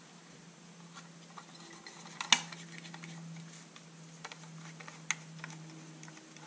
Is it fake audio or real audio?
real